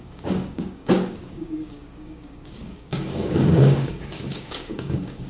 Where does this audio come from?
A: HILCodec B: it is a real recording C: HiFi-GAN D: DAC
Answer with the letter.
D